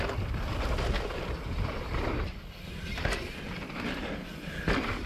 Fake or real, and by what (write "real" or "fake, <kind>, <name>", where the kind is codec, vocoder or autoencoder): real